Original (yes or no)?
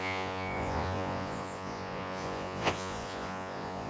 no